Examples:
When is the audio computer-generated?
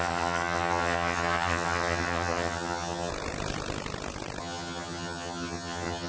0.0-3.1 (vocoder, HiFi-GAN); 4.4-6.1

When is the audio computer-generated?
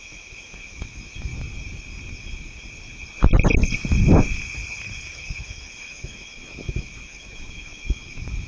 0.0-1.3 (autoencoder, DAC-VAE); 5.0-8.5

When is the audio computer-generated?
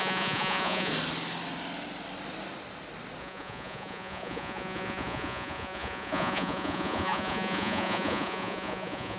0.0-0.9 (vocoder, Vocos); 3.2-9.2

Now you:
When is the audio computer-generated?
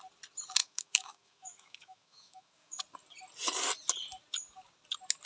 0.6-2.8 (autoencoder, DAC-VAE)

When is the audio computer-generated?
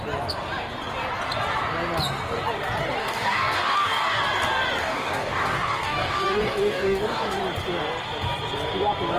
3.0-4.2 (codec, DAC); 4.8-7.4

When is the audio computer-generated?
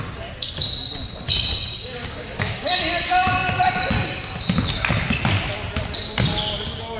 1.6-2.8 (codec, DAC)